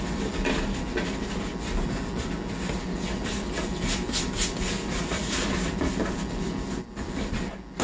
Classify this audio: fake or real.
real